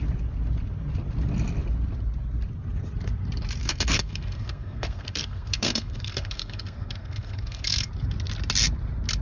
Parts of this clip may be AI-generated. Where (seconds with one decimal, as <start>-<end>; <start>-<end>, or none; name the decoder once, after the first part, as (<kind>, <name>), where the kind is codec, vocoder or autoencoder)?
3.6-7.9 (codec, SNAC)